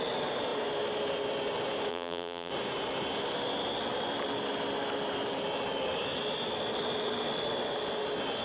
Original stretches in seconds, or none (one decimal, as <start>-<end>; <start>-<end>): 0.0-1.9; 2.5-8.4